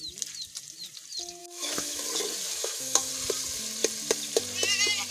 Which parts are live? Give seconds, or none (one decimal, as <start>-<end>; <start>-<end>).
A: 0.0-1.4; 2.0-2.5; 3.1-5.1